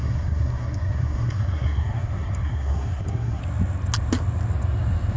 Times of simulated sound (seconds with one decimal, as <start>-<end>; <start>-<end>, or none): 0.0-3.4